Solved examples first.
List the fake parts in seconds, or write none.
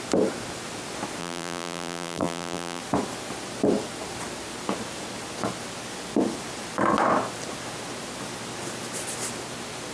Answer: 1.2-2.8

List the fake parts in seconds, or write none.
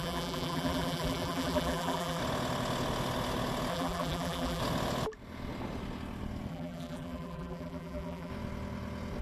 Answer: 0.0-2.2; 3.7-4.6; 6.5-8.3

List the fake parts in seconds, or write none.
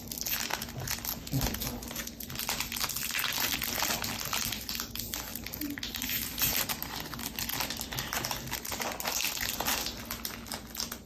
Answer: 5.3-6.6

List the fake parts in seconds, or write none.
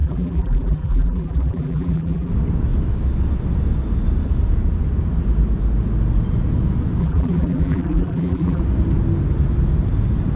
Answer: 0.0-2.3; 7.0-8.6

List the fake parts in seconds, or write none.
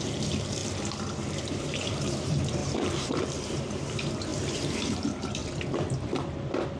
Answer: 0.0-0.6; 1.3-5.4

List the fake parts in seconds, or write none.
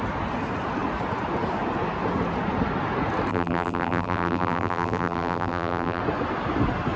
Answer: 3.3-6.0